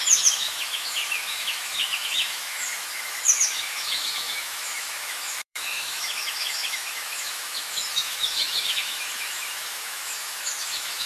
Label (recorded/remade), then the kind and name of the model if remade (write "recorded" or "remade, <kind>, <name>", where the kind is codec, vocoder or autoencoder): remade, autoencoder, DAC-VAE